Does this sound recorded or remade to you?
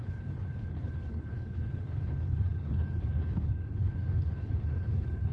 remade